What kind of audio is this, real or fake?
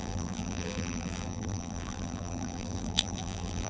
fake